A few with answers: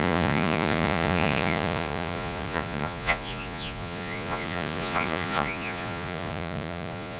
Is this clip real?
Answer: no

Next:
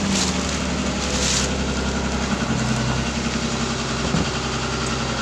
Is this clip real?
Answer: yes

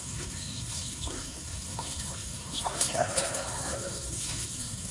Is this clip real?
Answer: no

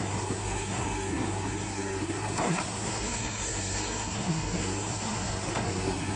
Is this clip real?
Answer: no